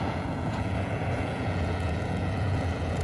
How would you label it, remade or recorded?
remade